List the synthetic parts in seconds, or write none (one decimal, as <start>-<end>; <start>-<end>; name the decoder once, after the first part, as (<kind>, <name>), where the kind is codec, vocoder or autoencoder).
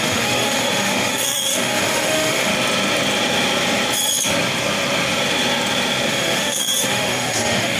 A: 0.0-2.5 (autoencoder, DAC-VAE); 6.1-7.8